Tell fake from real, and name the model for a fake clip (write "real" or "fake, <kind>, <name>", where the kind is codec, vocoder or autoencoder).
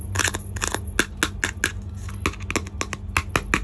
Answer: real